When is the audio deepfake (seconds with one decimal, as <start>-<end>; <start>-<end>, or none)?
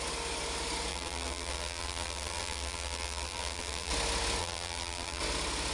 0.9-3.9; 4.4-5.2